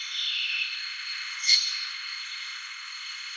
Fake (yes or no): yes